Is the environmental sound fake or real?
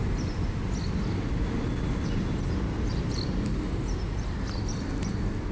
real